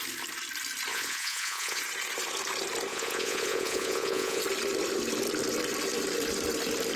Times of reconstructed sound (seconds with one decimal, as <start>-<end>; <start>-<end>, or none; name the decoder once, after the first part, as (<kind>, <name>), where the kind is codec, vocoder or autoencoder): 0.9-1.8 (vocoder, Vocos); 2.9-4.4